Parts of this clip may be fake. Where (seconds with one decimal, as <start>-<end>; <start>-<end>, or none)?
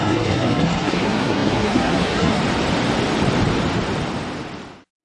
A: 0.0-2.4